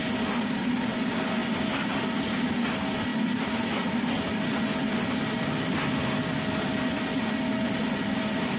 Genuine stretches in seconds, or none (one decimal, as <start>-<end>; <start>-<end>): 0.0-8.6